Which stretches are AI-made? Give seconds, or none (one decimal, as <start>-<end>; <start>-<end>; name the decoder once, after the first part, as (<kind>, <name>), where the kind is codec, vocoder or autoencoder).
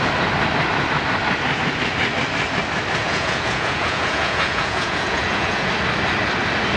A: 3.0-5.7 (vocoder, Vocos)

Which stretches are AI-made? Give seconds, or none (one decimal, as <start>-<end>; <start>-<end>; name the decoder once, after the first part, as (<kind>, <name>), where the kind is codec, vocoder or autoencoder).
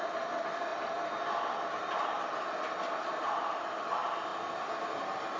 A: none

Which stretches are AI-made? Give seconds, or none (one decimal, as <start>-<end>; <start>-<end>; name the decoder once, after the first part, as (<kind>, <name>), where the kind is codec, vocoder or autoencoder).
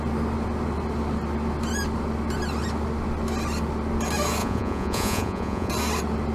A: 4.4-5.7 (vocoder, Vocos)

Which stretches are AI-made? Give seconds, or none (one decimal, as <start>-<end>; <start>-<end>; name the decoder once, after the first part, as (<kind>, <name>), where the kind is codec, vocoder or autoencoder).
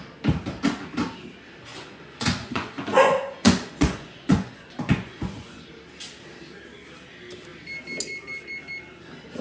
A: 1.7-5.6 (vocoder, Vocos)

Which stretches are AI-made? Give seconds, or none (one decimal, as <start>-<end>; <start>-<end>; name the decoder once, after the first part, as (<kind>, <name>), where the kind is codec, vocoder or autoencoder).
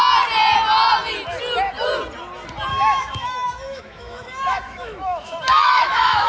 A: 2.7-6.3 (autoencoder, DAC-VAE)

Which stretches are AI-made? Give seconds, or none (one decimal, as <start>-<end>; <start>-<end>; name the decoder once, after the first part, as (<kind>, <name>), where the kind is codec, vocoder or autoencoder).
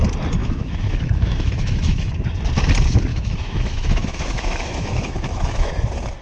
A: 0.4-2.1 (autoencoder, DAC-VAE); 3.1-5.7